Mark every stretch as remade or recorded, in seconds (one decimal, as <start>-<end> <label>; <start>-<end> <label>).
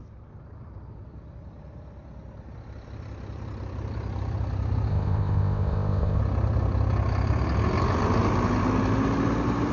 0.0-4.9 recorded; 4.9-6.2 remade; 6.2-9.7 recorded